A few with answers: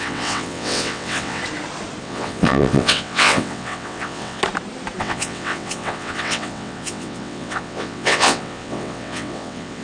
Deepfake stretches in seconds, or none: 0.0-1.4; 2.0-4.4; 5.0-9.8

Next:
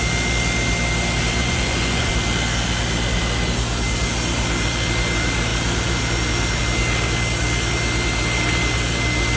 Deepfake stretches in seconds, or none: 1.4-2.1

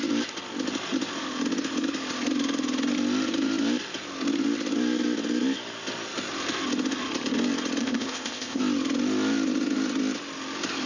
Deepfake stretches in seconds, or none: 7.8-8.6

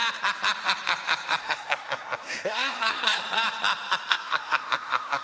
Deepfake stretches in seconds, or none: 1.4-3.2; 4.1-5.2